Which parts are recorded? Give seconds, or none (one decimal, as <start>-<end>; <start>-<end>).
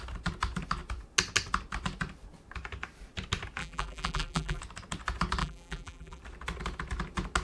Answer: 0.0-3.6; 4.6-5.4; 6.2-7.4